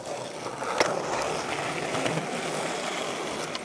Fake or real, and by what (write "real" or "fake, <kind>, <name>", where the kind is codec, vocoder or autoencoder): real